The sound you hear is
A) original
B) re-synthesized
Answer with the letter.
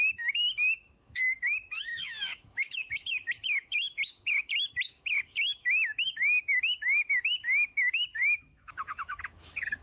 B